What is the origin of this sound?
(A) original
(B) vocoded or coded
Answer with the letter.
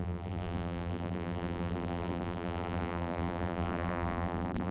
B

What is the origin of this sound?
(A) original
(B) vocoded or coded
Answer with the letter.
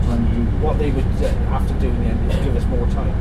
A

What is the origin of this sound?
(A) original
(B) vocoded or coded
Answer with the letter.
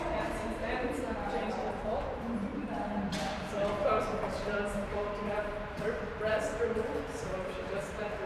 B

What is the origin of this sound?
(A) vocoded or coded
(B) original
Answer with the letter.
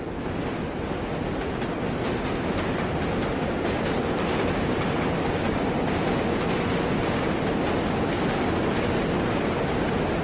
B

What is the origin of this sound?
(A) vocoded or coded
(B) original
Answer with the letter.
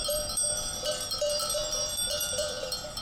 A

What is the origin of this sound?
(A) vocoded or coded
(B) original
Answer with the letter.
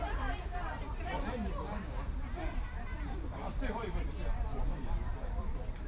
A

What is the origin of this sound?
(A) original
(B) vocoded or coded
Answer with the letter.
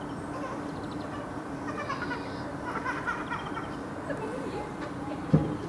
A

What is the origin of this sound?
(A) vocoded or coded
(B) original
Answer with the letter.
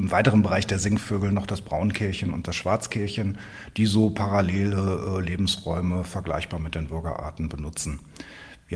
B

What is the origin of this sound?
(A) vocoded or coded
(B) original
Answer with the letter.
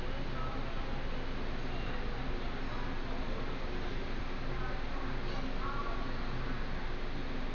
B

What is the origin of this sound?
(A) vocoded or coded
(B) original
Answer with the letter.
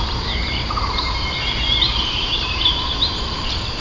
A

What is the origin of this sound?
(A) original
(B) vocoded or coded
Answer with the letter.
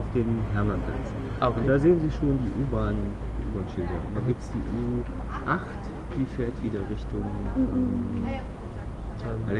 A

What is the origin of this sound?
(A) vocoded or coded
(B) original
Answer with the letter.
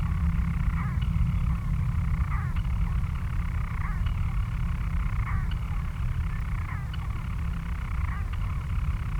B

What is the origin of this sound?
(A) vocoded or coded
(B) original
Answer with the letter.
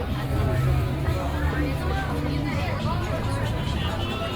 B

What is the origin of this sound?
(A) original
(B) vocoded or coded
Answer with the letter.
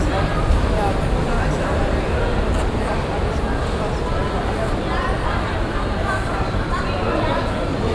B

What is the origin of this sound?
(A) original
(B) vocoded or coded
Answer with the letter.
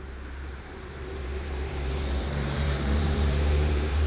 B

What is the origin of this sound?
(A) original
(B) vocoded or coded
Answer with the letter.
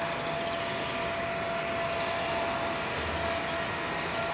A